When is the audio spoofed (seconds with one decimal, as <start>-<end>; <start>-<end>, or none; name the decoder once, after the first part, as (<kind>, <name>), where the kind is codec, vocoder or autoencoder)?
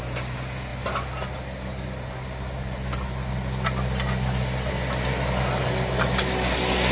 none